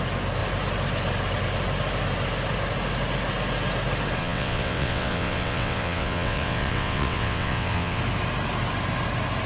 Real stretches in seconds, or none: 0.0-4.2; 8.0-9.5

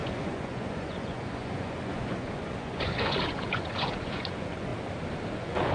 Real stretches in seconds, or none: 4.7-5.3